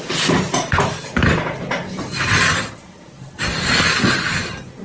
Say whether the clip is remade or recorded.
recorded